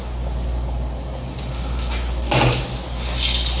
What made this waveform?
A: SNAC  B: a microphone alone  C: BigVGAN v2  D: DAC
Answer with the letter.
B